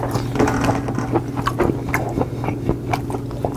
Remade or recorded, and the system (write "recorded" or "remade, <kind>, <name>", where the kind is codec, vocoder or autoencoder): recorded